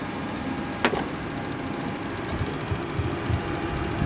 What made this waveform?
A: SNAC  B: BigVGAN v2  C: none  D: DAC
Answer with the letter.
C